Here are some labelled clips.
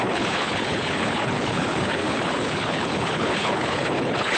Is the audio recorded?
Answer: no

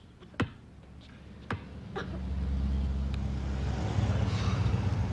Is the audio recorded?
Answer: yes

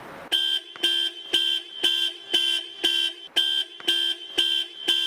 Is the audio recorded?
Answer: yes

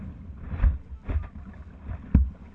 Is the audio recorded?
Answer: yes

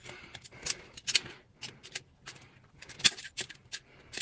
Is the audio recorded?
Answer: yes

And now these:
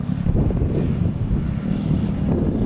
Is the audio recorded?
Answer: yes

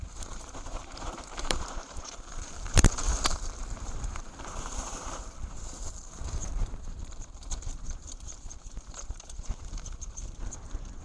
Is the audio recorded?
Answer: no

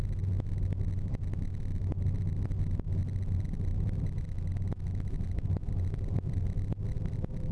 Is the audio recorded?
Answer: yes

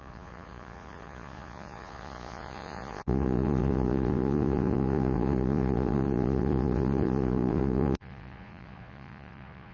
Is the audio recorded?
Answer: no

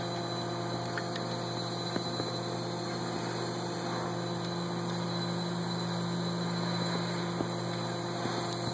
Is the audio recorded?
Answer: yes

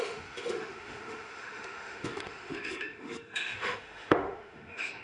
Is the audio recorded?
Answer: no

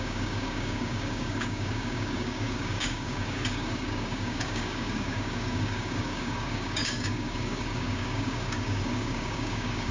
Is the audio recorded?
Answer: no